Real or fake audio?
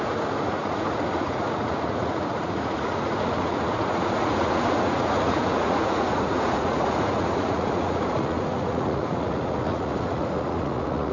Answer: fake